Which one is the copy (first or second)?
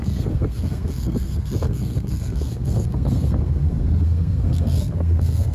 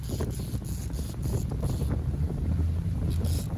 first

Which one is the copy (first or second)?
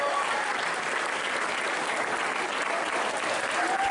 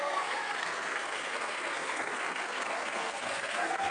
second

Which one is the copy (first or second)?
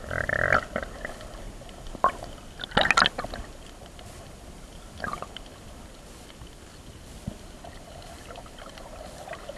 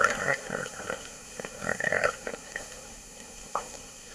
second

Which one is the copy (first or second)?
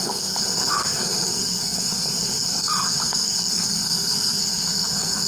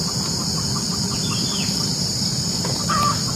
first